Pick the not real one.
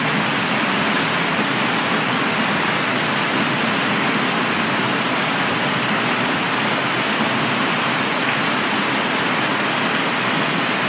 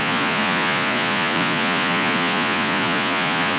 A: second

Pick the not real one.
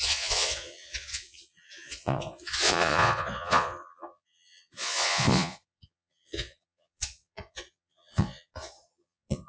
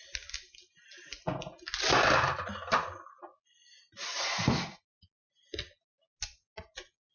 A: first